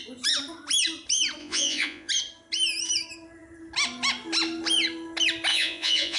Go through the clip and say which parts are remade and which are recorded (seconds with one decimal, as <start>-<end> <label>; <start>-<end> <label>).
0.0-1.4 recorded; 1.4-2.1 remade; 2.1-5.5 recorded; 5.5-6.2 remade